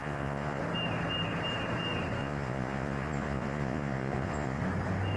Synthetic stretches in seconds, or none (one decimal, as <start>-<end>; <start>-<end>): 0.0-0.6; 2.2-4.6

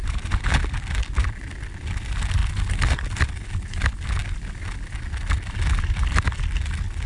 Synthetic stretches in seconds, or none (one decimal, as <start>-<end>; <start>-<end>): none

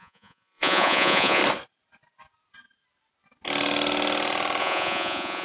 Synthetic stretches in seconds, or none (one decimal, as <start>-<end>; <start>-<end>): 0.0-1.4; 4.6-5.4

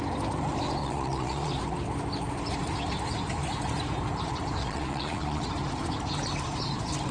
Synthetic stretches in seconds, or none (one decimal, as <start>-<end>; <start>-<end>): 0.8-1.5; 4.6-5.4

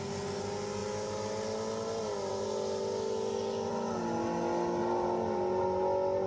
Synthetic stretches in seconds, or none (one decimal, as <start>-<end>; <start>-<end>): none

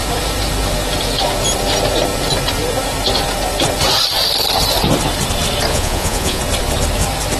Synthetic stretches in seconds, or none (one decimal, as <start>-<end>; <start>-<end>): 5.7-6.4